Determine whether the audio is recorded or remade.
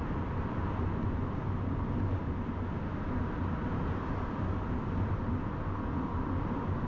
recorded